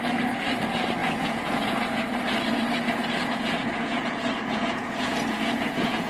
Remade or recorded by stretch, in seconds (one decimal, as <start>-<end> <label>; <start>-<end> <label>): 0.0-1.0 recorded; 1.0-2.0 remade; 2.0-3.0 recorded; 3.0-6.1 remade